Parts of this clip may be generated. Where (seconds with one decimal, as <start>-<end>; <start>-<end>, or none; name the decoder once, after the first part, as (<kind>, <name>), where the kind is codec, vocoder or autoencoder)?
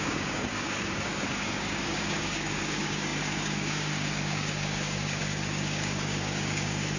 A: 0.0-7.0 (codec, DAC)